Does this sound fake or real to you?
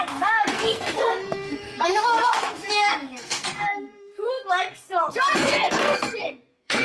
fake